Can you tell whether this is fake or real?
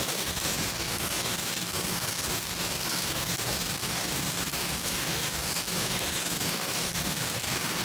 fake